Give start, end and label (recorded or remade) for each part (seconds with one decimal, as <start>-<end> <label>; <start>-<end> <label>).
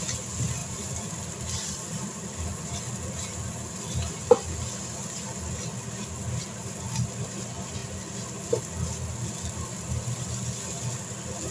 0.0-11.5 recorded